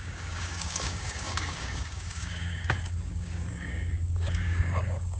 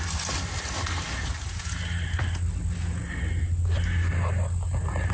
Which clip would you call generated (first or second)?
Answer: first